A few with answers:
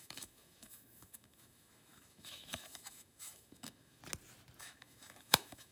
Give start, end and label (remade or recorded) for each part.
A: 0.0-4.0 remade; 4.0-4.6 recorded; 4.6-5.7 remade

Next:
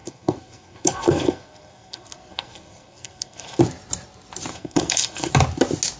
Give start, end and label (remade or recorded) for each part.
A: 0.0-3.6 remade; 3.6-4.5 recorded; 4.5-5.3 remade; 5.3-6.0 recorded